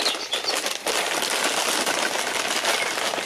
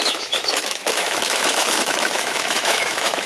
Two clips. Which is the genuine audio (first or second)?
first